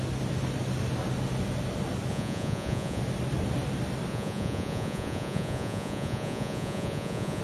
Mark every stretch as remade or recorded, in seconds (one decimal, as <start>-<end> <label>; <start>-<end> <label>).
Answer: 0.0-2.1 recorded; 2.1-3.0 remade; 3.0-4.1 recorded; 4.1-7.4 remade